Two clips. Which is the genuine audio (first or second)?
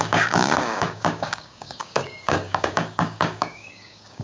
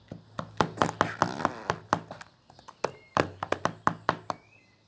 second